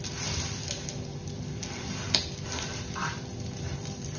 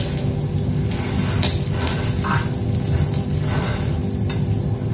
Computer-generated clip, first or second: first